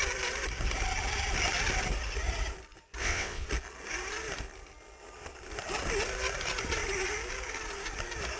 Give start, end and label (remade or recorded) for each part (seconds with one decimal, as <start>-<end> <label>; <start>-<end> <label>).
0.0-3.0 recorded; 3.0-3.5 remade; 3.5-8.4 recorded